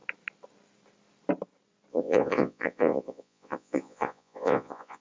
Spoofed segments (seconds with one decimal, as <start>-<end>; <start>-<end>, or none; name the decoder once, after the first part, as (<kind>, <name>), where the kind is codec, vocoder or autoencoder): 1.9-5.0 (vocoder, Vocos)